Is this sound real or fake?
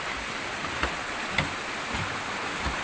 real